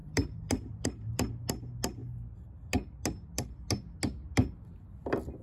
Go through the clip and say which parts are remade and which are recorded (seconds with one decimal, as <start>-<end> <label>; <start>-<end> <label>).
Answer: 0.0-1.3 remade; 1.3-5.4 recorded